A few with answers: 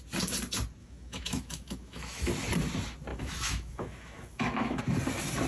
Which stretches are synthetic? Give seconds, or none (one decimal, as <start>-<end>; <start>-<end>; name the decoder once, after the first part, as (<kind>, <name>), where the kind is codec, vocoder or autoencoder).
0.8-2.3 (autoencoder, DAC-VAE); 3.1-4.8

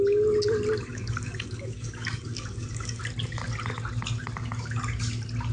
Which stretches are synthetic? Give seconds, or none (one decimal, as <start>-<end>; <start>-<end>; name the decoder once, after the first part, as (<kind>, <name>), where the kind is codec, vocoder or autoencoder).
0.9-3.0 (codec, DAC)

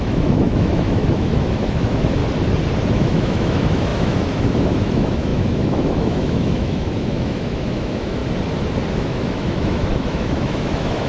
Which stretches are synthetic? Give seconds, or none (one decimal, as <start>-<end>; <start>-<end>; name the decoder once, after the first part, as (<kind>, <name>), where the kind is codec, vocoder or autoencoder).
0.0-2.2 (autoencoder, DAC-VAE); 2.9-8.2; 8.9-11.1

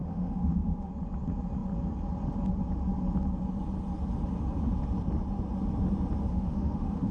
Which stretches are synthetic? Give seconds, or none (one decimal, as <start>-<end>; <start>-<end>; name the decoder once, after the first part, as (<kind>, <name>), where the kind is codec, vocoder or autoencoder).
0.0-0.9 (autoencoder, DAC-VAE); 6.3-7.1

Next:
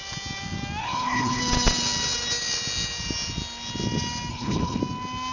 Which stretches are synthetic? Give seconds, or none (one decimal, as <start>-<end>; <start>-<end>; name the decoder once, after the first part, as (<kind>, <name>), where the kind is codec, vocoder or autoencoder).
0.8-1.4 (codec, HILCodec); 4.3-4.8

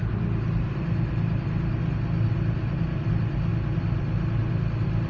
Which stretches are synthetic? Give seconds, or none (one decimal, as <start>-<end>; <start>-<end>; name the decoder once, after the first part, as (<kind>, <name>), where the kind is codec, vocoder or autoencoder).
none

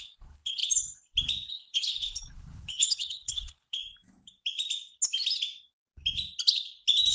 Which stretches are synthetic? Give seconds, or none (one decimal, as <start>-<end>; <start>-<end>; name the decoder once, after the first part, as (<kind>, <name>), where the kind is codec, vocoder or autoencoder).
0.0-0.6 (codec, HILCodec); 1.5-3.8